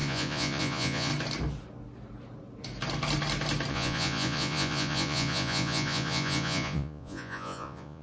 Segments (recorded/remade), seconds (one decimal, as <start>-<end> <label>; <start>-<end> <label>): 0.0-1.1 remade; 1.1-3.7 recorded; 3.7-8.0 remade